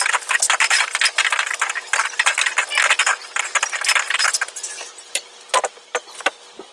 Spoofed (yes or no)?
no